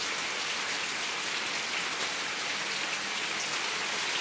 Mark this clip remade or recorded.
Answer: recorded